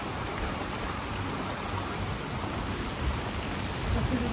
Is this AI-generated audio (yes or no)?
no